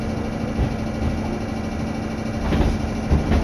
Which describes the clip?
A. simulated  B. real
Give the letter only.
B